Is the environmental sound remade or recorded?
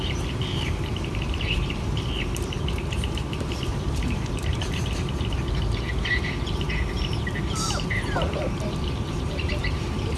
remade